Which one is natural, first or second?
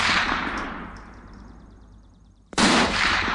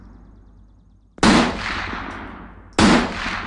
second